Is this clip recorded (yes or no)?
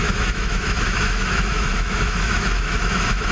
no